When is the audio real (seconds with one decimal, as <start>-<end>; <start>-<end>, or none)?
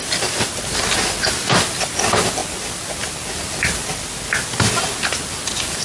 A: 0.0-5.8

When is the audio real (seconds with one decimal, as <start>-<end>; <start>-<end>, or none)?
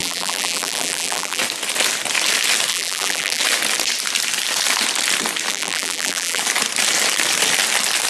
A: 1.4-2.7; 3.4-5.5; 6.4-8.1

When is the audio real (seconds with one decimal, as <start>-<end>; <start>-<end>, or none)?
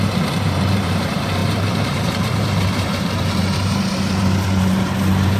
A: none